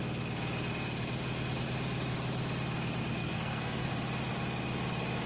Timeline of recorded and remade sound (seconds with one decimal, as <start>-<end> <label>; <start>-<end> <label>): 0.0-3.2 recorded; 3.2-3.9 remade; 3.9-5.3 recorded